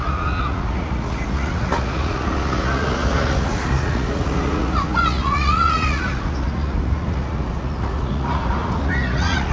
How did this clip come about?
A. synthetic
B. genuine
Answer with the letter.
A